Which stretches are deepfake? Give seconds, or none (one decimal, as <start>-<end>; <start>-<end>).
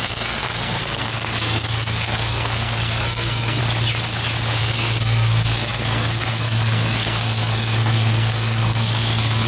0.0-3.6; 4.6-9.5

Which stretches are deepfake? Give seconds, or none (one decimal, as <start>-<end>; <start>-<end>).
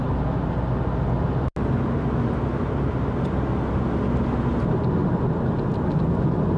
none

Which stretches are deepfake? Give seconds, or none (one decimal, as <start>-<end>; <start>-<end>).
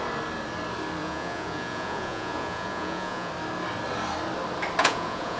1.0-3.3; 4.8-5.4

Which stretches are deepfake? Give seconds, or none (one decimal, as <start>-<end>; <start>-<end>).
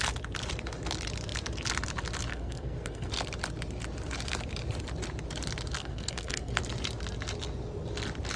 2.3-3.1; 5.8-6.6